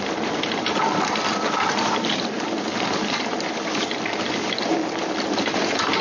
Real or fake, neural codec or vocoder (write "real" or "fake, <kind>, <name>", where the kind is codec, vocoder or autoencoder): real